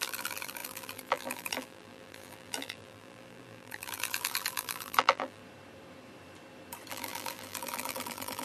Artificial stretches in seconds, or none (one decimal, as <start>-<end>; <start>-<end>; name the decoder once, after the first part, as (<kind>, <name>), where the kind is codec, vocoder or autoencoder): 0.0-5.4 (vocoder, BigVGAN v2); 6.9-8.4